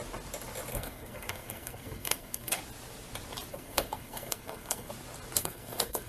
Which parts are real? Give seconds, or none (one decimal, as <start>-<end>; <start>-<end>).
0.0-0.7; 2.6-3.5; 4.9-5.4

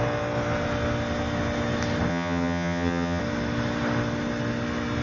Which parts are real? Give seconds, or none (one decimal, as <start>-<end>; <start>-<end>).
0.0-2.1; 3.2-5.0

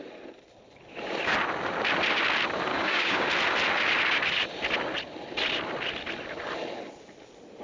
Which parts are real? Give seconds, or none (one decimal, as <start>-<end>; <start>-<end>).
0.0-2.7; 3.3-7.6